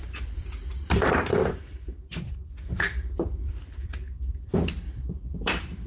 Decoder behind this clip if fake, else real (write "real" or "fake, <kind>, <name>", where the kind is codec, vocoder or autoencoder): fake, vocoder, BigVGAN v2